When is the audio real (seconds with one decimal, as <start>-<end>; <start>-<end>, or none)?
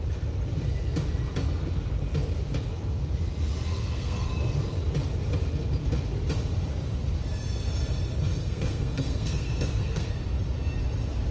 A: 0.0-3.7; 4.3-8.4; 10.1-11.3